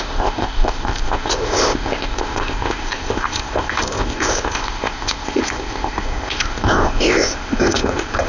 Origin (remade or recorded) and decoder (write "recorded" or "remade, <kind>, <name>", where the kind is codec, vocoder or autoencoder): remade, codec, ZipCodec